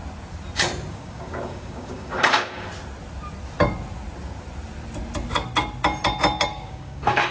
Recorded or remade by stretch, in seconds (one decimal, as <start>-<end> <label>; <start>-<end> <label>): 0.0-0.9 recorded; 0.9-2.7 remade; 2.7-6.5 recorded; 6.5-7.3 remade